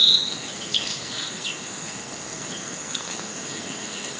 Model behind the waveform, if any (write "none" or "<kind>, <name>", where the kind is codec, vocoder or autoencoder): codec, SNAC